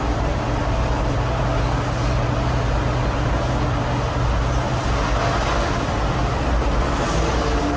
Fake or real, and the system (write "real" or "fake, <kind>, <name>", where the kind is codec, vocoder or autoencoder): real